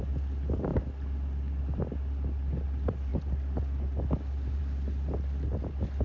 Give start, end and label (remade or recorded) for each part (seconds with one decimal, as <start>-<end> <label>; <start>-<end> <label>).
0.0-6.0 recorded